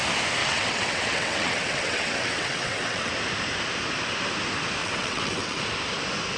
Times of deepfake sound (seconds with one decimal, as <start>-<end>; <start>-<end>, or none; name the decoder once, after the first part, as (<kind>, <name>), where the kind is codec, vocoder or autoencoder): 0.4-3.1 (vocoder, WaveNeXt); 4.8-5.6